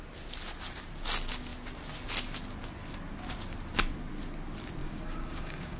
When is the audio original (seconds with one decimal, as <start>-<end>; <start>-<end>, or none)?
0.0-4.8